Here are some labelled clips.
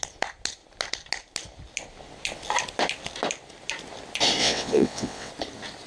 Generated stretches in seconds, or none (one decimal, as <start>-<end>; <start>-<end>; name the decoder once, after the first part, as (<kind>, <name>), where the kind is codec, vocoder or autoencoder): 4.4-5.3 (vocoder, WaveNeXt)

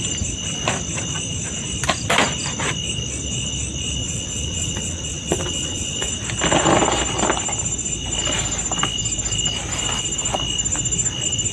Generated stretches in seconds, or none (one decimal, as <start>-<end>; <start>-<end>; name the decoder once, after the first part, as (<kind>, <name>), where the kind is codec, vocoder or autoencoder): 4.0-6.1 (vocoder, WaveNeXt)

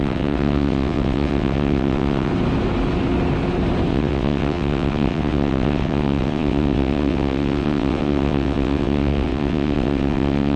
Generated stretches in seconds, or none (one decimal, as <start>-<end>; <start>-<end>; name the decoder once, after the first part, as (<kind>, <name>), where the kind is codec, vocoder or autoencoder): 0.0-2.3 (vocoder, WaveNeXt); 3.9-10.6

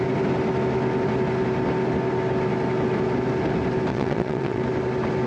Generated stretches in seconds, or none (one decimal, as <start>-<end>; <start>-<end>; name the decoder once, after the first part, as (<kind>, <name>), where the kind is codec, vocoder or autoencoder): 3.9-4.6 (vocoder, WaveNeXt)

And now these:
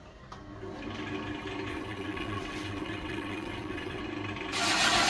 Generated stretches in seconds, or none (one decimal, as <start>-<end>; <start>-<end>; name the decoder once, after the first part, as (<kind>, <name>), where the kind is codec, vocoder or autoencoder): 1.7-4.0 (vocoder, WaveNeXt)